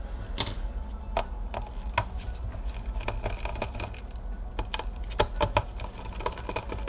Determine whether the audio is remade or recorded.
recorded